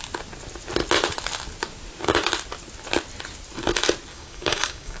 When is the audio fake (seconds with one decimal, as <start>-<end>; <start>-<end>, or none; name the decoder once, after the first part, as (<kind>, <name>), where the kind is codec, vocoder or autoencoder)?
4.1-5.0 (codec, DAC)